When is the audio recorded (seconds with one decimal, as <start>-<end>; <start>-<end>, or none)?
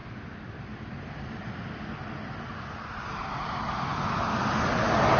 0.0-5.2